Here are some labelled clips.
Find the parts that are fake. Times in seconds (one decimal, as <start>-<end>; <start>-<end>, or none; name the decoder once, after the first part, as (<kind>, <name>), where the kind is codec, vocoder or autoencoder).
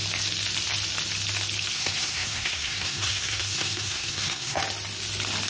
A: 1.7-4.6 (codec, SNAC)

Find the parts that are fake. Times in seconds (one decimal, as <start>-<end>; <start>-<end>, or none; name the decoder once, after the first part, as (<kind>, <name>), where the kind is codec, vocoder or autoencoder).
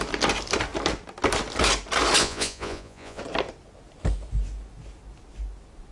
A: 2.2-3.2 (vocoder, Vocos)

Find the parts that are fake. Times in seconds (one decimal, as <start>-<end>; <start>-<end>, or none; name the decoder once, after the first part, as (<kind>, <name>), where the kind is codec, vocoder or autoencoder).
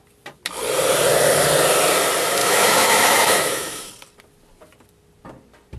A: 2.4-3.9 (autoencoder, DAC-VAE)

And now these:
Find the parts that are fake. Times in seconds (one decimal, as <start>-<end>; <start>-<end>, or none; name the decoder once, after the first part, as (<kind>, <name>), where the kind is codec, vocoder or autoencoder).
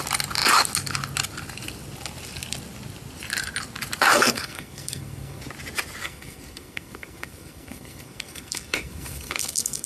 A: 4.1-5.4 (codec, SNAC); 6.0-9.9